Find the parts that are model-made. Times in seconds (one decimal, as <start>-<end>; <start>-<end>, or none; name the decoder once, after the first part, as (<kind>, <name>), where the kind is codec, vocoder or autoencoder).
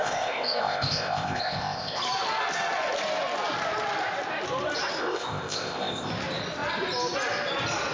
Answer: 0.0-2.0 (codec, ZipCodec); 5.0-6.1